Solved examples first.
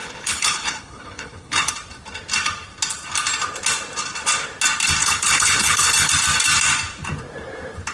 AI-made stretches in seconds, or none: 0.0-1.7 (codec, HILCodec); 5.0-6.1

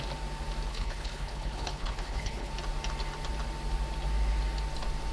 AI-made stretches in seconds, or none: 0.7-2.5 (codec, HILCodec)

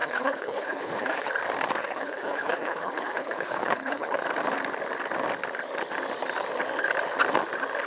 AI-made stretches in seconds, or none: 0.0-1.3 (codec, HILCodec); 1.8-4.2

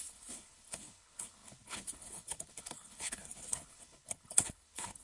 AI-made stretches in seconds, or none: 0.0-5.0 (codec, HILCodec)

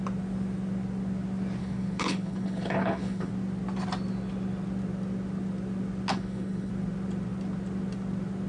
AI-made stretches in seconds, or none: 1.6-3.3 (codec, HILCodec); 6.1-6.7

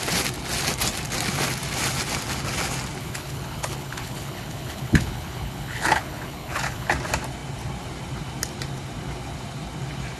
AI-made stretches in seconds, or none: 3.0-6.9 (codec, HILCodec)

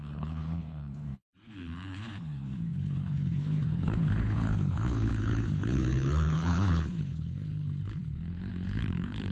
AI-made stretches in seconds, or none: 0.0-9.3 (codec, HILCodec)